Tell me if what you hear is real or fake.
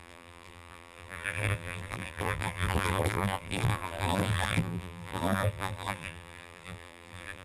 fake